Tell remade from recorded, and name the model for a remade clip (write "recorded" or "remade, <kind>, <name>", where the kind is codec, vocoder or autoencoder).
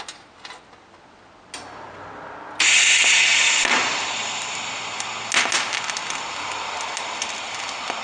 recorded